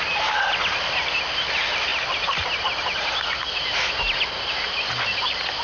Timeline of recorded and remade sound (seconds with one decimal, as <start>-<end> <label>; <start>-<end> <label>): 0.0-5.6 recorded